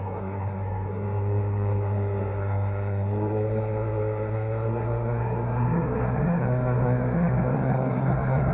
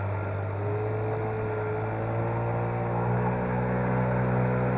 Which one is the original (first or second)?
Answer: second